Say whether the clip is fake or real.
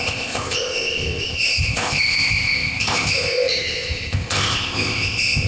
fake